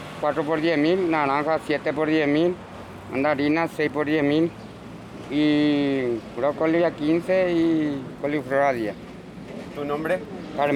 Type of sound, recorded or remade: recorded